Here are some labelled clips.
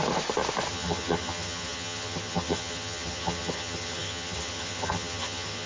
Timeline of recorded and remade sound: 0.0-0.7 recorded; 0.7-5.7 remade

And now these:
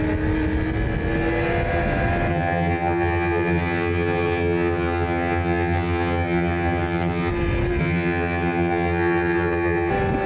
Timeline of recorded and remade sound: 0.0-2.3 recorded; 2.3-7.3 remade; 7.3-7.8 recorded; 7.8-9.9 remade; 9.9-10.3 recorded

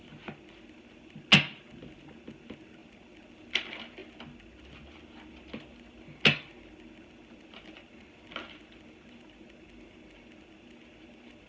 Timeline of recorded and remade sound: 0.0-11.5 recorded

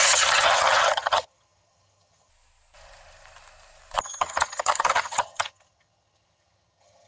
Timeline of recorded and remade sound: 0.0-2.3 remade; 2.3-4.0 recorded; 4.0-7.1 remade

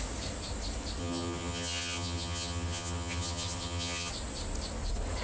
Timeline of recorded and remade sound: 0.0-1.0 recorded; 1.0-4.1 remade; 4.1-5.2 recorded

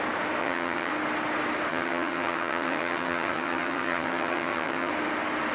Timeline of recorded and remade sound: 0.0-0.4 recorded; 0.4-0.9 remade; 0.9-1.7 recorded; 1.7-4.9 remade; 4.9-5.5 recorded

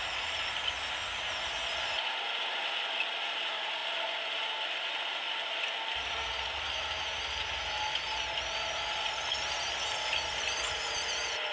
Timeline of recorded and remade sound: 0.0-11.5 recorded

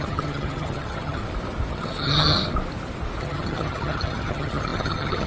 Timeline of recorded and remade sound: 0.0-1.2 remade; 1.2-1.7 recorded; 1.7-2.4 remade; 2.4-3.2 recorded; 3.2-5.3 remade